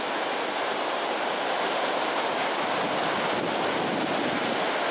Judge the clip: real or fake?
real